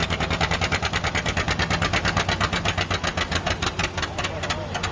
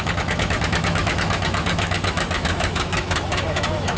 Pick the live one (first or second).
first